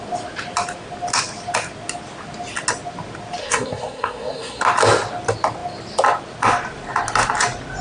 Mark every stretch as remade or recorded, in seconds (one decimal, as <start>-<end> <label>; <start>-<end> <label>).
0.0-3.4 recorded; 3.4-4.6 remade; 4.6-7.8 recorded